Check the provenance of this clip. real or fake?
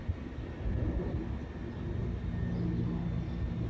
real